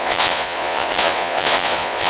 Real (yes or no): no